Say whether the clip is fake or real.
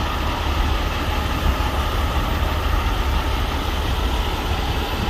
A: real